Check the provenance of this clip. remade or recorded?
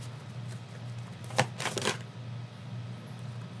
recorded